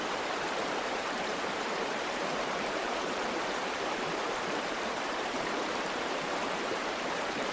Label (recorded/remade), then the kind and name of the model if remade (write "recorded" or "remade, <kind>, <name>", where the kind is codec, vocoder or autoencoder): remade, vocoder, BigVGAN v2